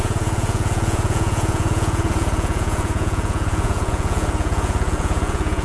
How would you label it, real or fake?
fake